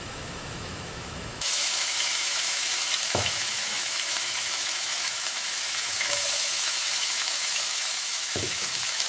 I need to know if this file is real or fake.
fake